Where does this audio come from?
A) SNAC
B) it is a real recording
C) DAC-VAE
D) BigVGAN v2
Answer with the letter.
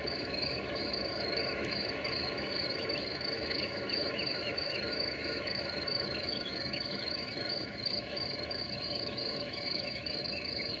C